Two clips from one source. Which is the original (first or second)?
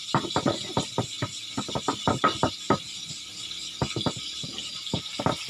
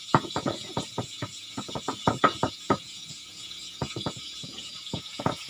first